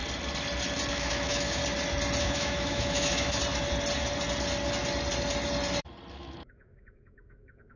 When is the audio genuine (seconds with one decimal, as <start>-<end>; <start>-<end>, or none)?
0.0-0.9; 1.6-2.2; 3.4-6.1